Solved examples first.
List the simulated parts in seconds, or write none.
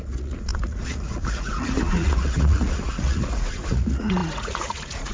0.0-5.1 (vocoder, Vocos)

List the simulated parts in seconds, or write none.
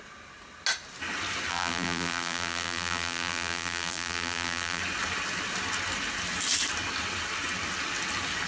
1.5-4.8 (vocoder, BigVGAN v2)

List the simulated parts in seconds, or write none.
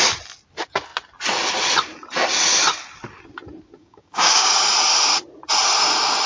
3.8-4.5 (codec, DAC)